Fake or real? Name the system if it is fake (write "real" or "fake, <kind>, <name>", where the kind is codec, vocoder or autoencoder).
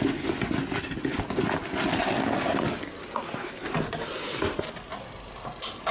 real